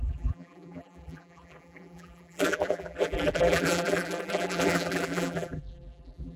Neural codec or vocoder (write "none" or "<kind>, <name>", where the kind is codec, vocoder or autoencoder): vocoder, BigVGAN v2